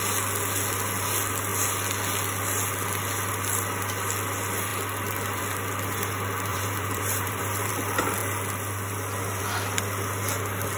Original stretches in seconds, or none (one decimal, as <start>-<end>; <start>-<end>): 0.0-6.5; 7.7-10.8